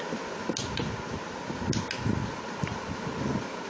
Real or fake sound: real